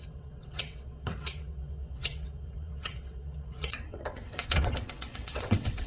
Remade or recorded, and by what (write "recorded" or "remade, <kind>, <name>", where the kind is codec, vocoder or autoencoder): remade, vocoder, WaveNeXt